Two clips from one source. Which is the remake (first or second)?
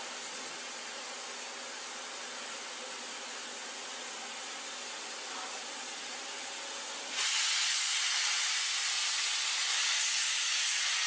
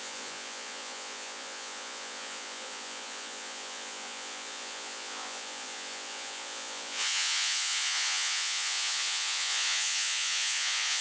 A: second